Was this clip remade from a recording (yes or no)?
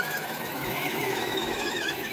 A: yes